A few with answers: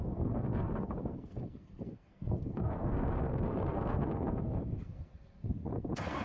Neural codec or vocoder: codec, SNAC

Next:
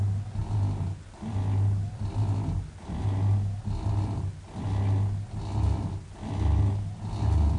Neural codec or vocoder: none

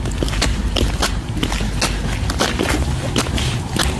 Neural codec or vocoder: none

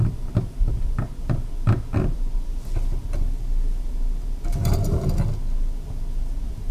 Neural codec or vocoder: none